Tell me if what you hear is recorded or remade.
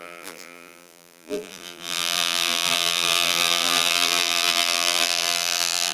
remade